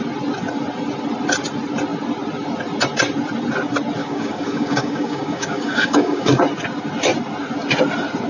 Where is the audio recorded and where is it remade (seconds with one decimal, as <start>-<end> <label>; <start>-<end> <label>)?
0.0-4.0 recorded; 4.0-6.4 remade; 6.4-8.3 recorded